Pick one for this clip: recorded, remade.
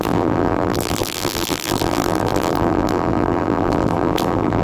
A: remade